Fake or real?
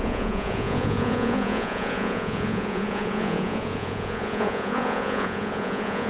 fake